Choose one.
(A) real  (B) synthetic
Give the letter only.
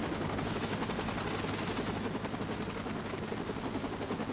A